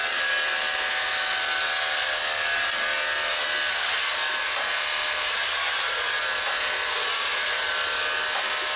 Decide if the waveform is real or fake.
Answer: real